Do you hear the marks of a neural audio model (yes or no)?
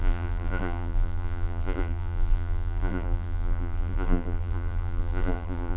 yes